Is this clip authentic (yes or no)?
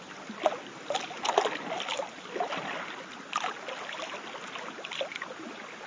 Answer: yes